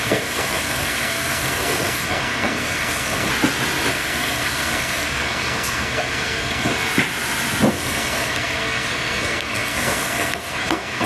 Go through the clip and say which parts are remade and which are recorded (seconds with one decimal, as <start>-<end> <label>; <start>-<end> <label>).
0.0-3.3 remade; 3.3-3.9 recorded; 3.9-6.7 remade; 6.7-7.7 recorded; 7.7-11.1 remade